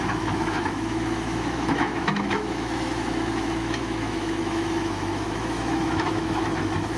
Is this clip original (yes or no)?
no